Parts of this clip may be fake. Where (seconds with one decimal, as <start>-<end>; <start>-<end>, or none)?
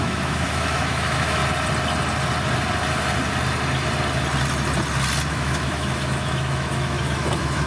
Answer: 0.0-1.4; 5.3-7.7